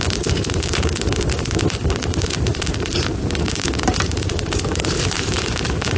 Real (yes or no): no